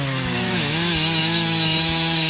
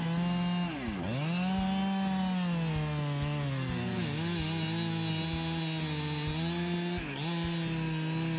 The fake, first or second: first